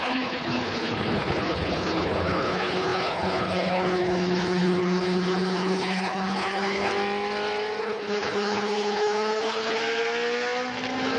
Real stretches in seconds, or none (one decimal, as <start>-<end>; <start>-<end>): 6.9-7.8; 9.8-11.2